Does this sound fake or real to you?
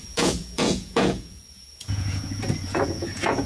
fake